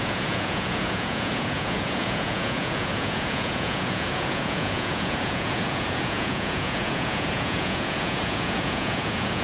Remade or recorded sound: remade